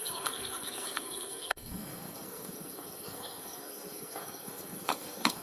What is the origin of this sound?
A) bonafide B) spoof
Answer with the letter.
B